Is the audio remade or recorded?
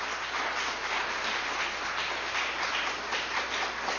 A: recorded